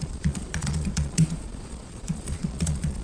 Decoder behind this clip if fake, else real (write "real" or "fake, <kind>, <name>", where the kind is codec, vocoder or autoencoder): fake, vocoder, Vocos